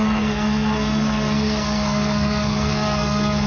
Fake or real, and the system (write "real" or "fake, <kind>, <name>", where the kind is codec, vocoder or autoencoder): fake, codec, SNAC